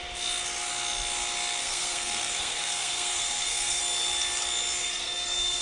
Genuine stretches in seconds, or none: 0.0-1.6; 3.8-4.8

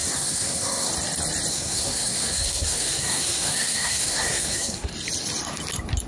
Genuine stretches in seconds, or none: 0.9-1.5; 4.9-6.1

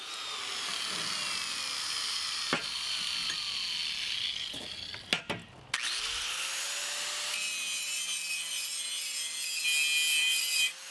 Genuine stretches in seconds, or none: 0.0-10.9